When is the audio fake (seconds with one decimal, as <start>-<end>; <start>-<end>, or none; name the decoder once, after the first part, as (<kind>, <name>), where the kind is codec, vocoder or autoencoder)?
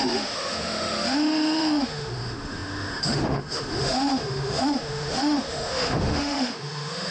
0.0-7.1 (autoencoder, DAC-VAE)